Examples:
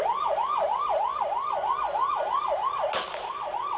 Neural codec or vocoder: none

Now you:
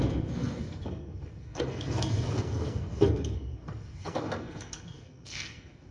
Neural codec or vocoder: codec, SNAC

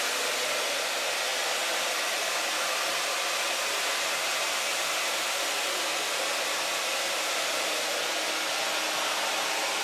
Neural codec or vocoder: none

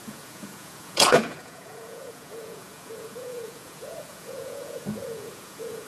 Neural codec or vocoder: vocoder, Vocos